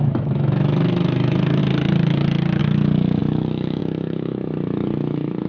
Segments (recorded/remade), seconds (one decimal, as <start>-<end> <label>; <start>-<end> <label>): 0.0-1.6 remade; 1.6-2.6 recorded; 2.6-5.5 remade